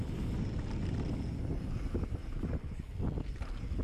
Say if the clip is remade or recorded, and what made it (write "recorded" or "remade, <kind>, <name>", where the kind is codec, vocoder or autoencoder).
recorded